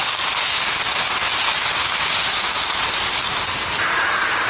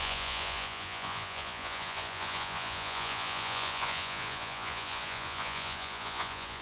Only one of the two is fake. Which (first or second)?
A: second